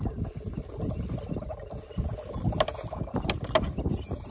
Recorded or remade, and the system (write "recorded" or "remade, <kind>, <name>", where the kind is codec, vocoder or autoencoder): recorded